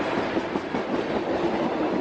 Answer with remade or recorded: recorded